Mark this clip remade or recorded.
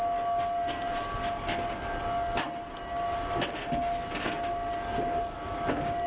recorded